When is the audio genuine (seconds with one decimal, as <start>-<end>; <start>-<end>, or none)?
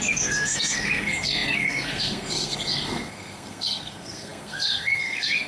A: none